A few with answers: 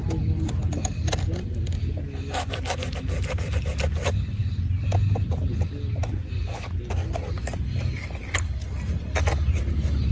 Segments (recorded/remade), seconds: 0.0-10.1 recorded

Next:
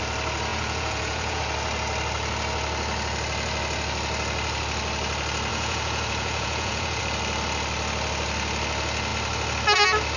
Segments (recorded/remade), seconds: 0.0-0.5 recorded; 0.5-1.4 remade; 1.4-5.5 recorded; 5.5-7.0 remade; 7.0-10.2 recorded

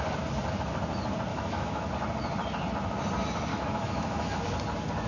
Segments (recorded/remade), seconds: 0.0-1.3 recorded; 1.3-1.9 remade; 1.9-3.5 recorded; 3.5-4.4 remade; 4.4-5.1 recorded

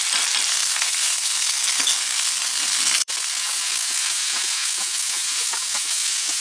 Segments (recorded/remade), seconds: 0.0-0.5 recorded; 0.5-3.3 remade; 3.3-6.4 recorded

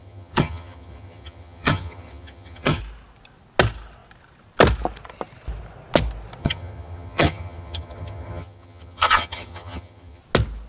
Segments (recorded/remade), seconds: 0.0-2.8 remade; 2.8-6.4 recorded; 6.4-10.2 remade; 10.2-10.7 recorded

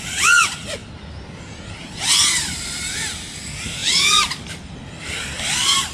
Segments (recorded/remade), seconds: 0.0-5.9 recorded

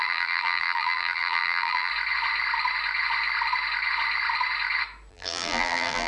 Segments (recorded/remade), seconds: 0.0-1.9 remade; 1.9-5.1 recorded; 5.1-6.1 remade

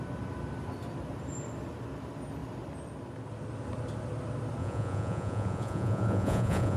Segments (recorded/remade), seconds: 0.0-4.6 recorded; 4.6-6.8 remade